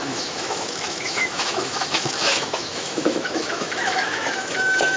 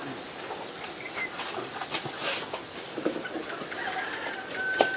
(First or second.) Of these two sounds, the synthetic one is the first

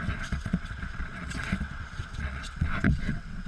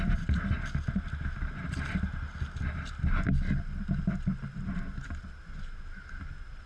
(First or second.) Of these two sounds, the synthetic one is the first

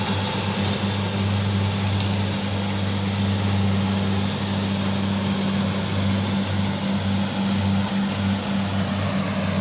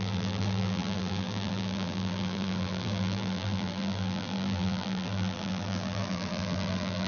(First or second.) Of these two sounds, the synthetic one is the second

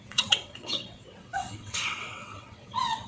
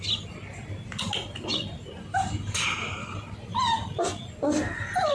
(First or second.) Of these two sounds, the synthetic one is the first